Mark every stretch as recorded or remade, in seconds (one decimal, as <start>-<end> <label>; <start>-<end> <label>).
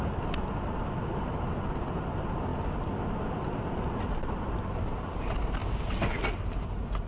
0.0-7.1 recorded